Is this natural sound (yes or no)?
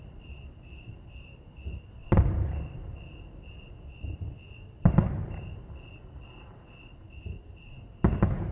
yes